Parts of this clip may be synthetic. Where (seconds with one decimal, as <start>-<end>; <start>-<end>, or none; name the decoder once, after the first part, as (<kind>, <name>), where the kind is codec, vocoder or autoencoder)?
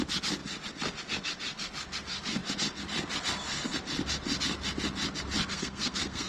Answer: 5.5-6.3 (codec, SNAC)